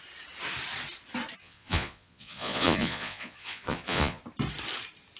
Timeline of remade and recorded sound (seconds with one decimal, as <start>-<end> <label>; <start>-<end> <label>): 0.0-1.4 recorded; 1.4-4.2 remade; 4.2-5.2 recorded